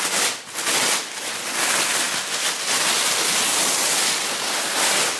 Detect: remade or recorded recorded